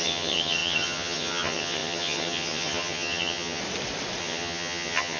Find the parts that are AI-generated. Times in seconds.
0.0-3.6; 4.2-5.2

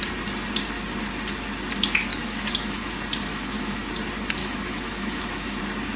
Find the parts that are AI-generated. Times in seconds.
2.1-2.9; 3.3-3.9; 4.4-5.6

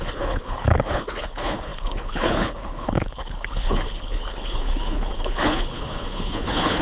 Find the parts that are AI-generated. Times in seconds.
0.0-6.8